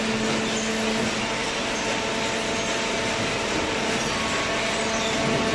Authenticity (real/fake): real